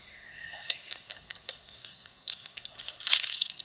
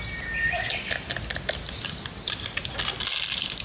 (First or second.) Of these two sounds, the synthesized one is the first